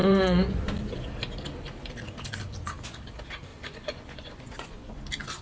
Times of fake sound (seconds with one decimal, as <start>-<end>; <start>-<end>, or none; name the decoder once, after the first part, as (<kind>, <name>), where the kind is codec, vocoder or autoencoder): 0.0-0.6 (vocoder, Vocos); 3.5-5.0